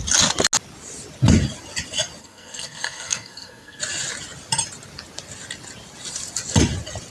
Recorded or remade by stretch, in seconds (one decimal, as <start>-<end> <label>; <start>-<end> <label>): 0.0-2.2 recorded; 2.2-3.8 remade; 3.8-7.1 recorded